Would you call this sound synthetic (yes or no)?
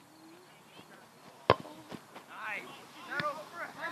no